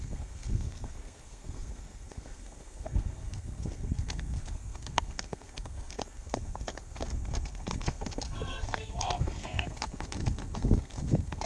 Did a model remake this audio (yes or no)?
yes